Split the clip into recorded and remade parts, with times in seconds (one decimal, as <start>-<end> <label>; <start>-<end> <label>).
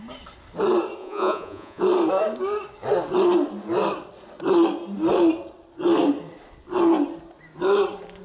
0.0-1.0 recorded; 1.0-1.8 remade; 1.8-8.2 recorded